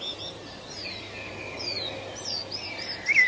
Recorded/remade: recorded